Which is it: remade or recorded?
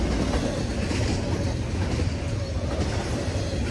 recorded